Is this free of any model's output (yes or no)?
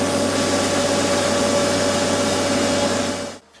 yes